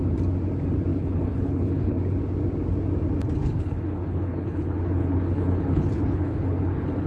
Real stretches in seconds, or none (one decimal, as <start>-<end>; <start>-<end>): 0.0-0.9; 2.0-3.4